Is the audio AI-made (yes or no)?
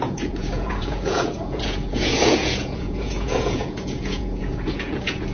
yes